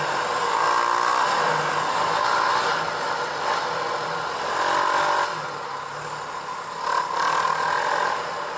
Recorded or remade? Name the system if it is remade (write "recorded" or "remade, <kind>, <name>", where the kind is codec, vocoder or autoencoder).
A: recorded